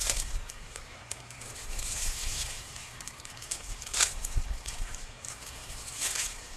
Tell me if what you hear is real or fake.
fake